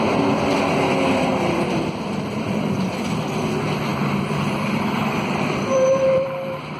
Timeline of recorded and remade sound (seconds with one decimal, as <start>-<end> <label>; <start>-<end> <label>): 0.0-1.3 recorded; 1.3-3.5 remade; 3.5-3.9 recorded; 3.9-6.8 remade